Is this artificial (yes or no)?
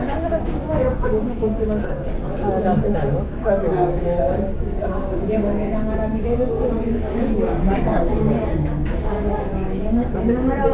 yes